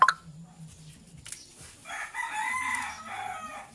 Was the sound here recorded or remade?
recorded